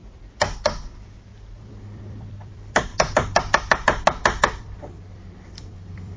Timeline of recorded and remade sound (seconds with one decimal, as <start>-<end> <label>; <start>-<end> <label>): 0.0-2.9 remade; 2.9-4.6 recorded; 4.6-6.2 remade